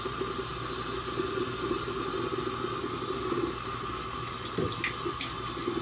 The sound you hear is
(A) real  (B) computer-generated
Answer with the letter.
A